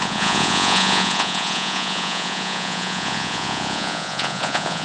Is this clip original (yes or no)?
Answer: no